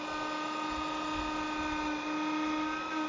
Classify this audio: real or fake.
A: real